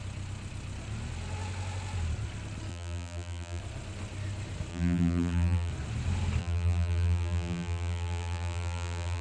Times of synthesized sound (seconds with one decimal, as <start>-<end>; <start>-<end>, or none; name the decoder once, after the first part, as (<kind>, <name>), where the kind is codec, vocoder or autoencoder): 2.7-3.6 (vocoder, BigVGAN v2); 4.7-5.7; 6.4-9.2